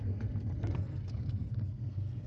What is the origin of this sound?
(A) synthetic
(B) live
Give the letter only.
A